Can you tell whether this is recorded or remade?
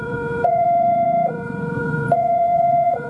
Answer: remade